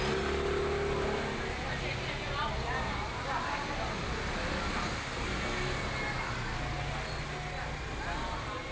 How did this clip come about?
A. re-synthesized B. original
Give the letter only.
B